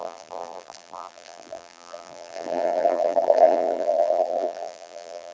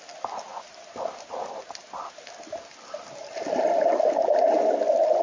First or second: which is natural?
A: second